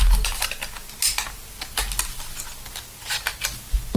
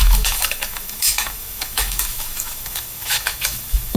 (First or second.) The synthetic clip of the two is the second